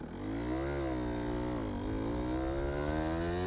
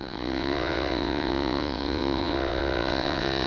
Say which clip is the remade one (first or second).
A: second